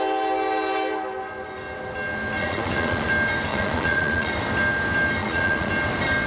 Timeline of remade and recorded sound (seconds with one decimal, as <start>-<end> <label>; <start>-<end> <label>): 0.0-2.4 recorded; 2.4-3.1 remade; 3.1-3.5 recorded; 3.5-4.3 remade; 4.3-5.2 recorded; 5.2-5.7 remade; 5.7-6.3 recorded